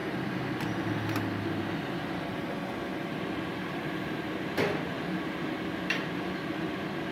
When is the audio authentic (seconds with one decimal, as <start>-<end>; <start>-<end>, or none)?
2.5-2.9